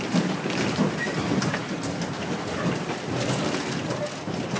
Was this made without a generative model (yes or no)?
yes